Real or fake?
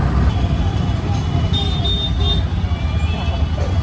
real